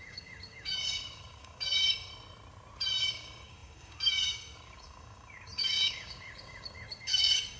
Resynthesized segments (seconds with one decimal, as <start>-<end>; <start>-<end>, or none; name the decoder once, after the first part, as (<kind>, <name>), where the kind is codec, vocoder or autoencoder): 0.0-2.1 (codec, DAC); 3.1-7.6